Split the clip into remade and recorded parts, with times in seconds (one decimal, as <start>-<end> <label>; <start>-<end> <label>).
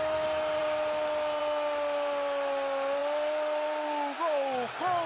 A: 0.0-5.1 recorded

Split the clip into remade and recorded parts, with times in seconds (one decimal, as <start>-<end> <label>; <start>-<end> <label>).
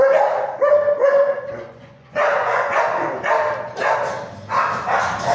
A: 0.0-1.0 recorded; 1.0-2.8 remade; 2.8-5.3 recorded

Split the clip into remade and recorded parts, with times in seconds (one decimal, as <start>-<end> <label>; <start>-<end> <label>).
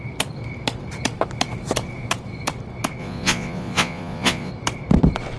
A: 0.0-3.0 recorded; 3.0-4.5 remade; 4.5-5.4 recorded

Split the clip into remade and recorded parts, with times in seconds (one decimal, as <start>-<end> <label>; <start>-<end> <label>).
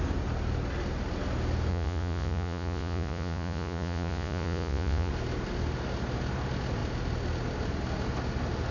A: 0.0-1.7 recorded; 1.7-5.1 remade; 5.1-8.7 recorded